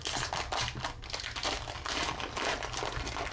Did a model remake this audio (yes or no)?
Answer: no